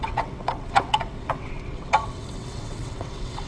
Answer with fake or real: fake